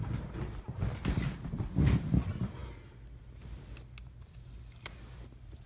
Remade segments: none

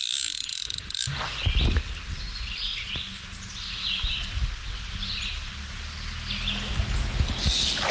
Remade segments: none

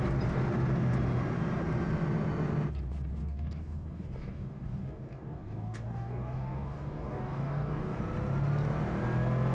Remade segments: 3.2-8.0 (codec, DAC)

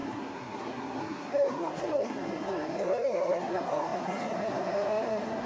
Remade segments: 0.0-5.5 (codec, SNAC)

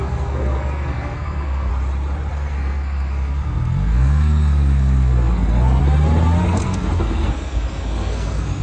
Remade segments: 0.0-1.7 (codec, SNAC); 2.3-5.8; 6.4-8.6

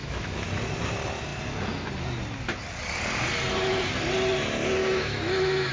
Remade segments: 0.0-0.5 (autoencoder, DAC-VAE); 4.8-5.7

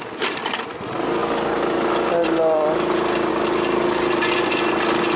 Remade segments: none

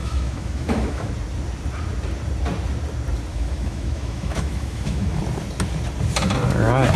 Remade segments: 0.0-1.1 (autoencoder, DAC-VAE); 3.3-5.2